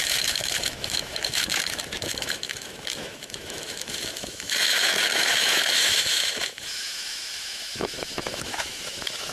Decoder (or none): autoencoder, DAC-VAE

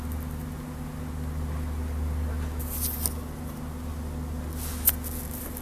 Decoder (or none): none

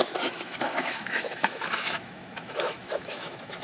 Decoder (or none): autoencoder, DAC-VAE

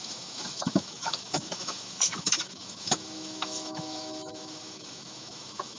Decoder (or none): autoencoder, DAC-VAE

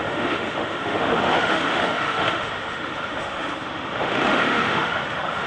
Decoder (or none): autoencoder, DAC-VAE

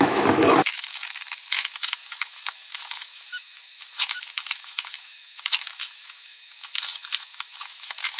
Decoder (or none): autoencoder, DAC-VAE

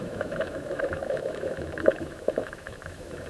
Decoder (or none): autoencoder, DAC-VAE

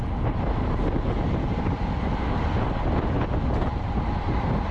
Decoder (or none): none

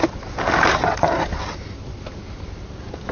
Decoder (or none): none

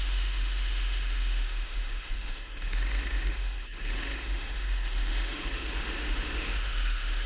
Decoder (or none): autoencoder, DAC-VAE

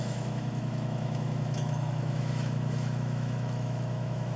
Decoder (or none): autoencoder, DAC-VAE